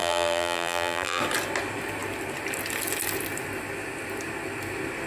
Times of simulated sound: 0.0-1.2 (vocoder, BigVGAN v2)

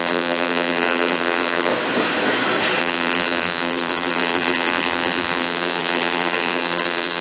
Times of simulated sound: 0.0-1.7 (vocoder, BigVGAN v2); 2.8-7.2